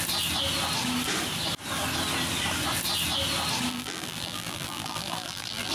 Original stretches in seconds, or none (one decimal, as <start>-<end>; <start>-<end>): 0.0-3.7